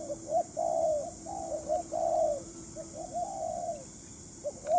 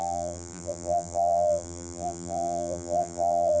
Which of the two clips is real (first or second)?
first